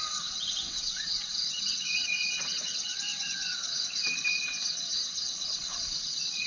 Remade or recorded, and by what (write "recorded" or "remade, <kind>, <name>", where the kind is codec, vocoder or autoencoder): remade, vocoder, WaveNeXt